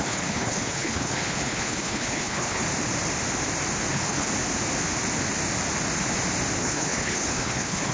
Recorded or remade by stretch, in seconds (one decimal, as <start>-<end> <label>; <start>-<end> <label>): 0.0-2.6 remade; 2.6-3.9 recorded; 3.9-4.3 remade; 4.3-6.6 recorded; 6.6-7.9 remade